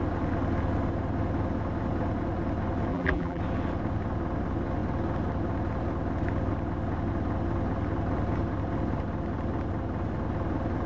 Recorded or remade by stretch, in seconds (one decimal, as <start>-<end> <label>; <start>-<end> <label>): 0.0-2.9 recorded; 2.9-3.4 remade; 3.4-10.9 recorded